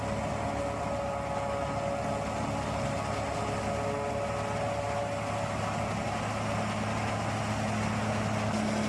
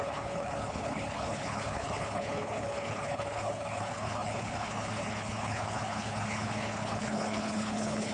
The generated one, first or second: second